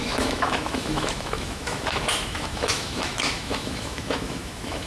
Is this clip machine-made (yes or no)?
yes